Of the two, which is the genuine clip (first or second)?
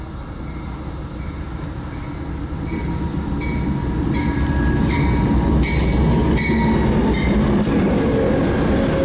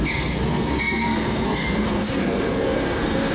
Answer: first